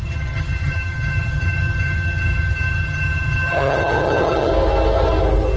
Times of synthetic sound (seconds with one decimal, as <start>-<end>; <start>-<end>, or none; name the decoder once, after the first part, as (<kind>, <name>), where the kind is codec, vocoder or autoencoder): 0.0-4.5 (vocoder, HiFi-GAN)